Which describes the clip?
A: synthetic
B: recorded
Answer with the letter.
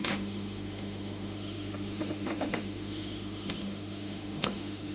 A